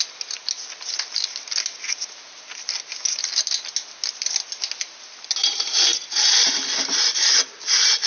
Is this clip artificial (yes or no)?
no